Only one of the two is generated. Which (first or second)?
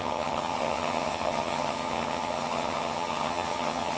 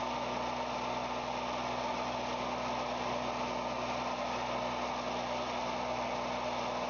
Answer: first